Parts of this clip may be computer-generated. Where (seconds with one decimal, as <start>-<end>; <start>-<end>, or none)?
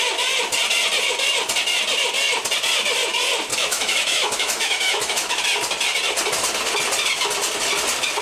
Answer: 3.5-5.4